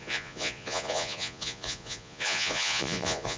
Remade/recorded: remade